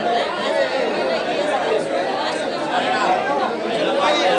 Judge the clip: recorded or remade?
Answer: recorded